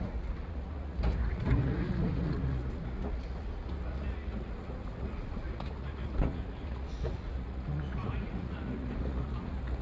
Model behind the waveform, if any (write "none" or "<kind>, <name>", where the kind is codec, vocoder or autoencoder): vocoder, Vocos